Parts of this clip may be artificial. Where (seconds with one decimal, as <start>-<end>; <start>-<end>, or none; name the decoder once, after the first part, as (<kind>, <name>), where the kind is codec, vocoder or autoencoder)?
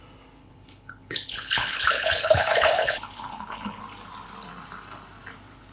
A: 0.4-3.8 (codec, HILCodec)